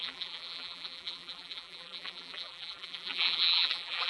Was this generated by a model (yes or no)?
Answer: yes